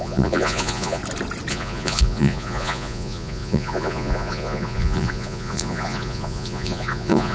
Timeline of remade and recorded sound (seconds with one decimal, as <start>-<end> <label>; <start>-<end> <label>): 0.0-1.0 remade; 1.0-1.5 recorded; 1.5-7.3 remade

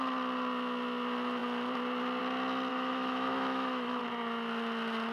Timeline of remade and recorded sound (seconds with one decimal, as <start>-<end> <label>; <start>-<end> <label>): 0.0-2.7 recorded; 2.7-4.0 remade; 4.0-5.1 recorded

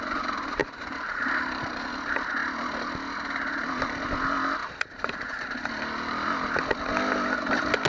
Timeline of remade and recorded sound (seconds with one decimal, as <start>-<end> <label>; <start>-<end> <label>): 0.0-0.6 recorded; 0.6-1.9 remade; 1.9-4.6 recorded; 4.6-5.7 remade; 5.7-7.9 recorded

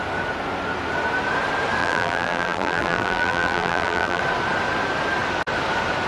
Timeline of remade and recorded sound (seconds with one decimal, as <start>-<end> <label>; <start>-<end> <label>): 0.0-1.8 recorded; 1.8-4.2 remade; 4.2-6.1 recorded